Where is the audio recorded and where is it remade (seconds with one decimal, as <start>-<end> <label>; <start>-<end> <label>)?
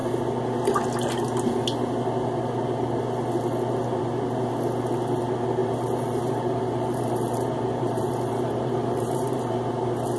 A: 0.0-5.6 recorded; 5.6-9.6 remade; 9.6-10.2 recorded